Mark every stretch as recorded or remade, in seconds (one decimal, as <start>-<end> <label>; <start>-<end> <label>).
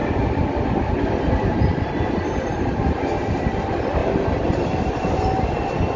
0.0-6.0 recorded